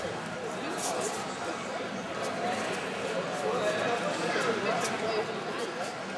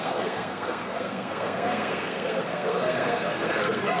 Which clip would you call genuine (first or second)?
first